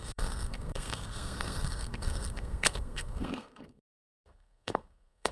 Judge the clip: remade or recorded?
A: remade